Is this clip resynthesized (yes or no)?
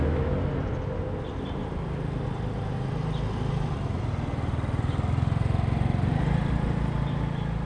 no